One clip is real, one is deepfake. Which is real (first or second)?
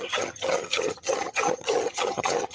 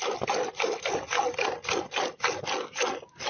second